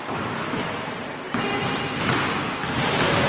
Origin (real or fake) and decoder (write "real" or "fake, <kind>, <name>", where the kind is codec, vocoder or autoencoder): real